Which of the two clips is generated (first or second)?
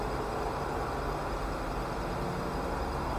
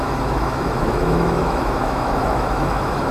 second